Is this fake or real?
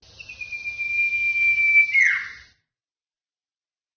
real